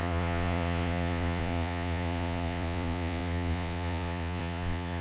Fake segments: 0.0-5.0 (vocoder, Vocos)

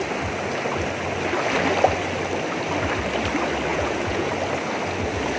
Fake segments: 3.7-4.3 (vocoder, Vocos)

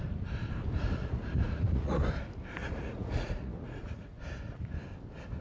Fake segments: 1.0-2.0 (vocoder, Vocos); 2.6-4.7

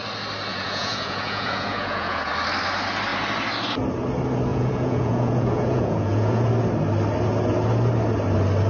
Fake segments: 0.5-2.3 (vocoder, Vocos); 4.5-6.5